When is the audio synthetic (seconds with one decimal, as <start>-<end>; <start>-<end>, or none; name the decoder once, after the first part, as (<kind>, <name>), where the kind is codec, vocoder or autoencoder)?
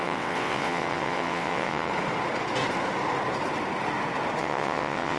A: 0.0-1.9 (vocoder, WaveNeXt); 4.4-5.2